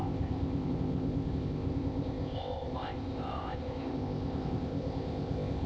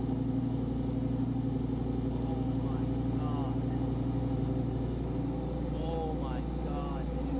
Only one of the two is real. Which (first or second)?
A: second